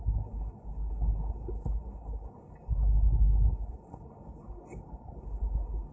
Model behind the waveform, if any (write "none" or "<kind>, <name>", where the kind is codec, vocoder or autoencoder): codec, HILCodec